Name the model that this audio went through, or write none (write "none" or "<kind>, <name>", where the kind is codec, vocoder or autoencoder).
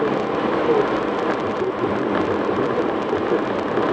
none